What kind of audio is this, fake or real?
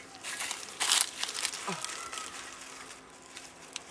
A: real